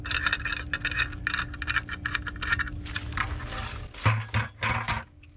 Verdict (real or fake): real